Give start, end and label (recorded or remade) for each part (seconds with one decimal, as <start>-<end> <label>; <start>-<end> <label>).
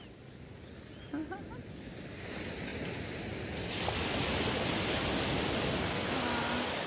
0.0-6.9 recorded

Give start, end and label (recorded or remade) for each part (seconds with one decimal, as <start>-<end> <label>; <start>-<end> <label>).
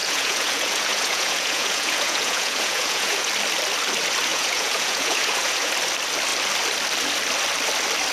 0.0-3.3 remade; 3.3-4.3 recorded; 4.3-5.7 remade; 5.7-8.1 recorded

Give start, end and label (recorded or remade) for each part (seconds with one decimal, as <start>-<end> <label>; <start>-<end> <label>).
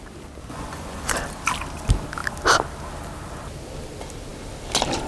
0.0-0.4 recorded; 0.4-1.1 remade; 1.1-5.1 recorded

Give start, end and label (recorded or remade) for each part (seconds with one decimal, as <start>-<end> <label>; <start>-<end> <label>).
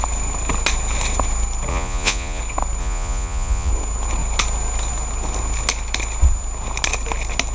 0.0-1.7 recorded; 1.7-2.4 remade; 2.4-2.8 recorded; 2.8-3.7 remade; 3.7-7.5 recorded